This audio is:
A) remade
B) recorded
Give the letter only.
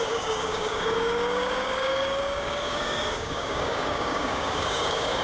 A